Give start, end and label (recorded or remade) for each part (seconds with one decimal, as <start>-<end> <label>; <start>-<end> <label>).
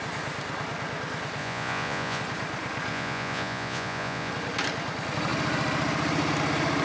0.0-1.4 recorded; 1.4-2.2 remade; 2.2-2.9 recorded; 2.9-4.3 remade; 4.3-6.8 recorded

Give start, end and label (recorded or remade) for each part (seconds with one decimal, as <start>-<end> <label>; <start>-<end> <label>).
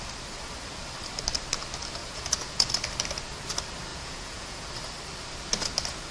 0.0-2.0 recorded; 2.0-2.7 remade; 2.7-3.9 recorded; 3.9-4.7 remade; 4.7-6.1 recorded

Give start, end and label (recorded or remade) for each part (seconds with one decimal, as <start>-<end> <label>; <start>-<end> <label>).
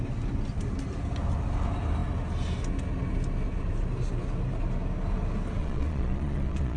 0.0-5.6 recorded; 5.6-6.8 remade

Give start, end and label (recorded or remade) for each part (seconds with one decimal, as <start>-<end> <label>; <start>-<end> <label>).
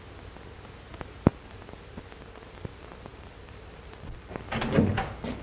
0.0-5.4 recorded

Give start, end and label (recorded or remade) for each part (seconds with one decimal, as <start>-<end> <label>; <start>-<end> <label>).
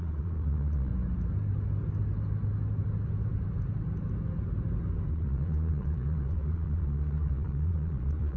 0.0-0.9 remade; 0.9-5.1 recorded; 5.1-8.4 remade